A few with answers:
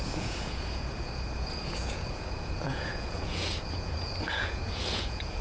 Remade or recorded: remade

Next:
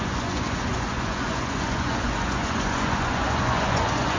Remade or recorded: remade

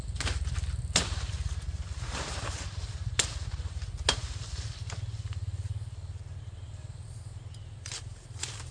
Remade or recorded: recorded